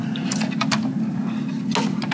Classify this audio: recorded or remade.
recorded